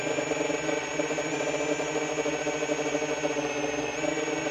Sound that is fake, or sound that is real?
real